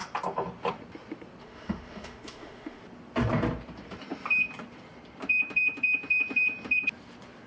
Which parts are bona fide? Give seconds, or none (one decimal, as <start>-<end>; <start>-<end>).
0.0-1.4; 2.8-7.5